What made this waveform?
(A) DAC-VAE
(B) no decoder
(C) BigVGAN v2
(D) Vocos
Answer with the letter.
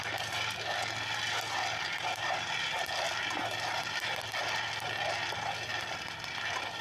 B